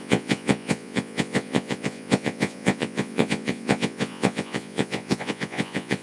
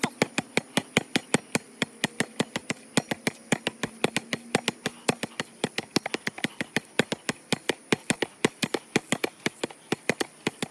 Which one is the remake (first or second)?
first